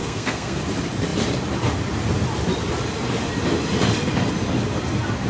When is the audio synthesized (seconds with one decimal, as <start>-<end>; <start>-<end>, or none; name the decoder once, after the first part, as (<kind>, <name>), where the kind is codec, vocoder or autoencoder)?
0.0-0.6 (codec, SNAC)